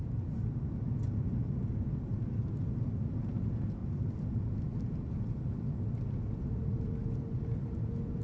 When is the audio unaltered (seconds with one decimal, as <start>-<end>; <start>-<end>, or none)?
0.0-3.8; 4.9-8.2